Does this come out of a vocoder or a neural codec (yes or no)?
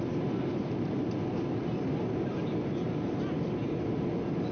no